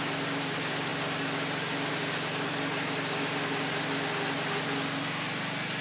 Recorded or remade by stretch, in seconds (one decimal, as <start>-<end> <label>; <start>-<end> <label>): 0.0-5.8 recorded